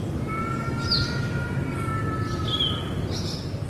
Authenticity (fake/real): real